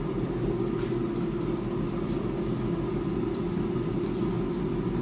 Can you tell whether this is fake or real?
real